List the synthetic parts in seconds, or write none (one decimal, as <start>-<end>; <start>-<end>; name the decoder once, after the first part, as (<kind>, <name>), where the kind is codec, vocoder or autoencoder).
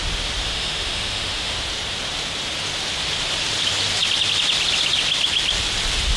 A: 0.4-1.6 (autoencoder, DAC-VAE)